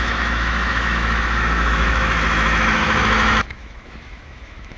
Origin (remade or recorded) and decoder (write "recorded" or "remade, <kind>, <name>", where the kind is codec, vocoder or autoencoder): remade, autoencoder, DAC-VAE